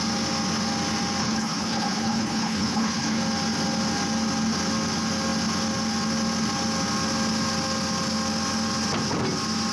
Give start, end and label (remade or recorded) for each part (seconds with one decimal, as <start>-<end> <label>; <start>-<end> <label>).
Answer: 0.0-1.2 recorded; 1.2-3.2 remade; 3.2-9.7 recorded